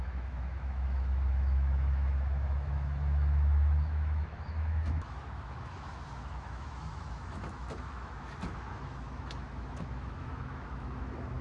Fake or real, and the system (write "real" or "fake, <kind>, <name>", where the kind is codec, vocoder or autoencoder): fake, autoencoder, DAC-VAE